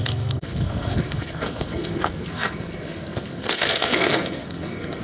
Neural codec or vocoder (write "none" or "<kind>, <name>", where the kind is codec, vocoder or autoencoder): codec, SNAC